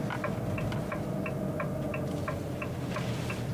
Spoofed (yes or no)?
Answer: no